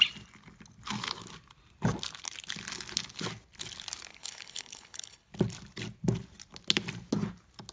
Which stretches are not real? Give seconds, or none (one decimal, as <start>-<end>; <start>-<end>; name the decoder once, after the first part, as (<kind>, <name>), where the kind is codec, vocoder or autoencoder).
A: 4.1-5.3 (codec, HILCodec)